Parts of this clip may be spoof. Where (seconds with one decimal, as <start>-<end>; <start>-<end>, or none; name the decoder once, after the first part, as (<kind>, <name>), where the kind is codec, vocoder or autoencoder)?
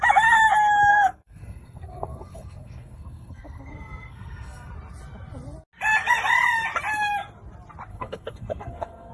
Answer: 0.9-4.7 (codec, SNAC); 7.9-9.1